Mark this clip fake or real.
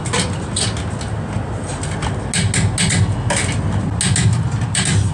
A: real